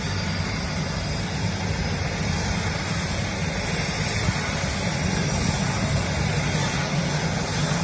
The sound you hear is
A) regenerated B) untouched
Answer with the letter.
B